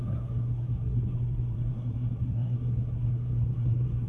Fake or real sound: fake